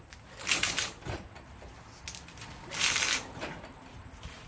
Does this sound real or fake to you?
real